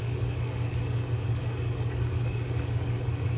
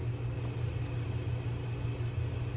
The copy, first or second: first